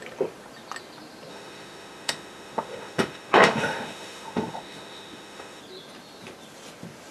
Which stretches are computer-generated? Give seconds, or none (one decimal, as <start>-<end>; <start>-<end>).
1.3-5.6